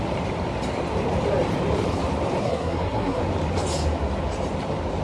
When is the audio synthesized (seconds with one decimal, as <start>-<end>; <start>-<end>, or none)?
2.4-3.2